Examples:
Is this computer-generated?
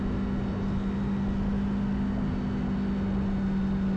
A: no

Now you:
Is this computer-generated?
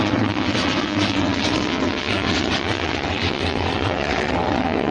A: yes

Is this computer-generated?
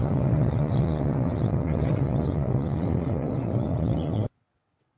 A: yes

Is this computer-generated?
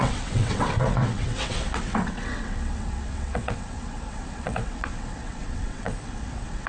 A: yes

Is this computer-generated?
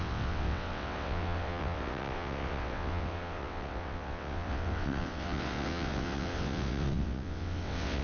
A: yes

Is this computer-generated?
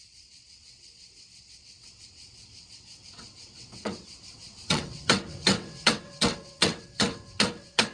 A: yes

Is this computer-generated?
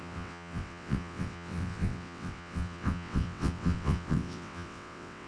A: yes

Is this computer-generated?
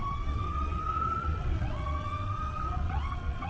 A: yes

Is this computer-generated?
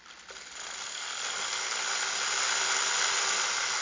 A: no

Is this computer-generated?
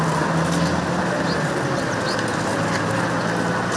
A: no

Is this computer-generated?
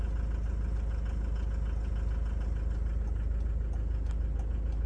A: no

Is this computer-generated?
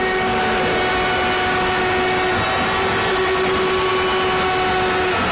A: no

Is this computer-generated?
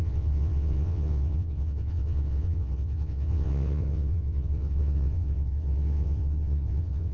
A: yes